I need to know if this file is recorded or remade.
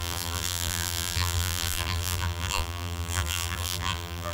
remade